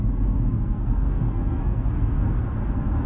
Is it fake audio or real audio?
fake